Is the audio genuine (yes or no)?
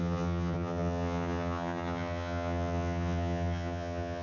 no